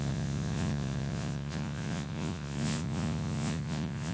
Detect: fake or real fake